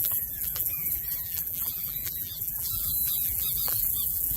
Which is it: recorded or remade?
remade